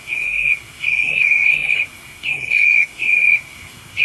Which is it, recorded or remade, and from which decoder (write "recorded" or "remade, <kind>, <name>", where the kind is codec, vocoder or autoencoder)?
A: remade, codec, SNAC